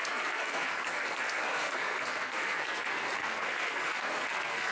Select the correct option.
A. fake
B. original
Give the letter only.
A